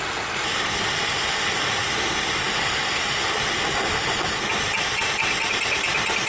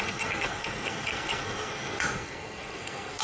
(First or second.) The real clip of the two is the first